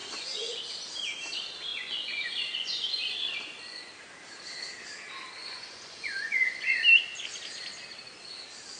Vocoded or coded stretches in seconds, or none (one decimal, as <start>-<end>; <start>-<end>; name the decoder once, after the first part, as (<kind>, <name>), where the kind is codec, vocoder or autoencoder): 0.0-0.6 (vocoder, Vocos); 1.7-3.9; 5.4-6.7